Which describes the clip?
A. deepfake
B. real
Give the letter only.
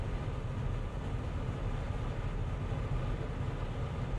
B